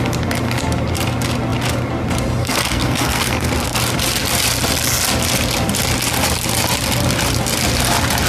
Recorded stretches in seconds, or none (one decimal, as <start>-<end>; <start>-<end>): 0.0-2.4; 3.8-8.3